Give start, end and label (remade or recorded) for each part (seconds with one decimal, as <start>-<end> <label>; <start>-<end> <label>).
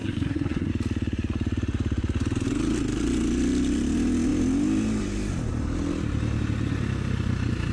0.0-0.7 remade; 0.7-7.7 recorded